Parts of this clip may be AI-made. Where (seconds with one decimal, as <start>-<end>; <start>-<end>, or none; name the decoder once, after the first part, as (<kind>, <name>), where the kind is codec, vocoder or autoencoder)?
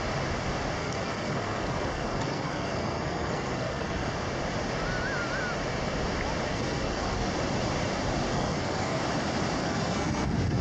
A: 0.8-4.1 (codec, SNAC); 6.5-7.3; 8.3-9.0; 9.6-10.6